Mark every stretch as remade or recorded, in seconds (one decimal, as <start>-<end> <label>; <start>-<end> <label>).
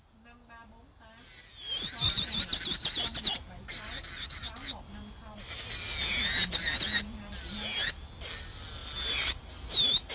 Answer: 0.0-10.1 recorded